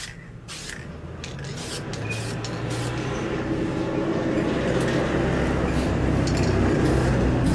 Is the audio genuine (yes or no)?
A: yes